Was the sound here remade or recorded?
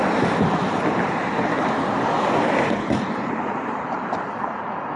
remade